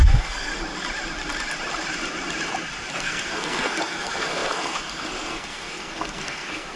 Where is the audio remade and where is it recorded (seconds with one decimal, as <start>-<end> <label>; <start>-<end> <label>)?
0.0-0.5 remade; 0.5-2.9 recorded; 2.9-6.8 remade